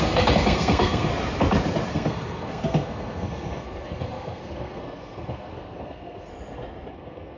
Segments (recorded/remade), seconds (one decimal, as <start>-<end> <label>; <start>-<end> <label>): 0.0-1.1 remade; 1.1-1.9 recorded; 1.9-6.3 remade; 6.3-6.9 recorded; 6.9-7.4 remade